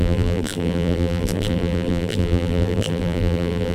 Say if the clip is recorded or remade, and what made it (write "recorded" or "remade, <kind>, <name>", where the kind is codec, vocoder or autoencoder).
remade, vocoder, BigVGAN v2